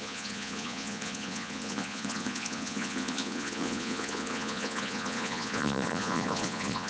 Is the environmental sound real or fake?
fake